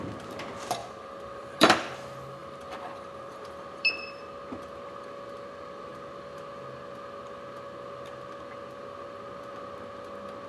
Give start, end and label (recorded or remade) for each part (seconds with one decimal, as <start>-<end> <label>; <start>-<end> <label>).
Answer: 0.0-0.8 recorded; 0.8-1.9 remade; 1.9-2.4 recorded; 2.4-4.2 remade; 4.2-10.5 recorded